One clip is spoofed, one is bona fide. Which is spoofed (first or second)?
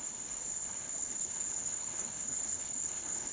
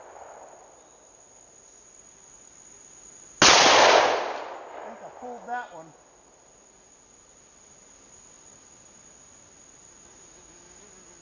first